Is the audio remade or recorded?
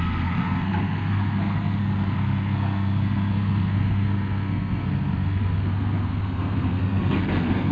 remade